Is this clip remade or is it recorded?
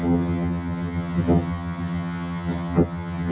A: remade